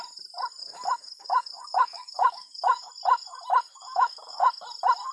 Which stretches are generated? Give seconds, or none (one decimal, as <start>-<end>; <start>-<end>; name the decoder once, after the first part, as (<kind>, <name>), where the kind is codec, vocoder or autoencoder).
0.6-2.9 (codec, DAC); 3.7-4.5